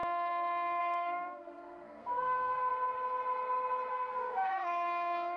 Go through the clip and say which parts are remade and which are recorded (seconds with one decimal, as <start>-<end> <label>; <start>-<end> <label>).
0.0-0.8 recorded; 0.8-2.7 remade; 2.7-3.9 recorded; 3.9-5.4 remade